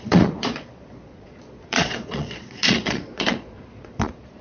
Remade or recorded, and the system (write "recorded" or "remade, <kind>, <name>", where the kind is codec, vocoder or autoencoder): remade, vocoder, Vocos